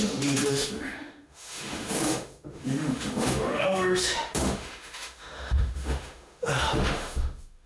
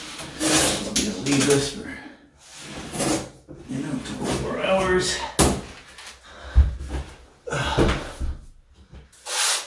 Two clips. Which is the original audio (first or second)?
second